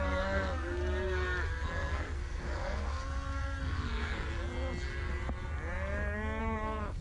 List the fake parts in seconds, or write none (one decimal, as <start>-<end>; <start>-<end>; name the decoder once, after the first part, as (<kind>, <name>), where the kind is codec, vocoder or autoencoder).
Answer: 0.0-0.8 (codec, SNAC); 1.5-4.4; 6.4-7.0